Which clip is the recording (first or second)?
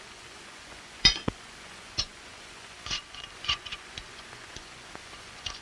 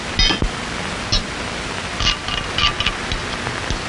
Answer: second